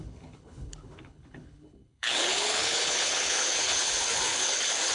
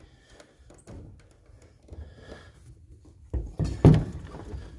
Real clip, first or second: second